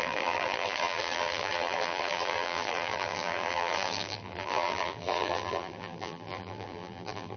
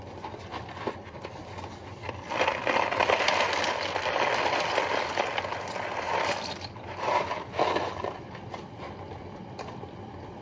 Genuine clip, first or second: second